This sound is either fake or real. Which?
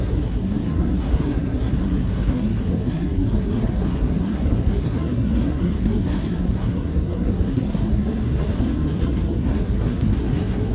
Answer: fake